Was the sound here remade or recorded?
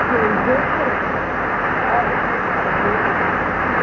recorded